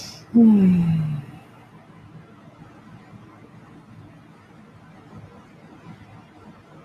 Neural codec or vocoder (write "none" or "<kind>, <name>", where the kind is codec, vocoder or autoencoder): none